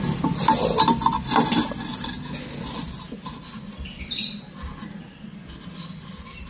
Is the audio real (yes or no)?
yes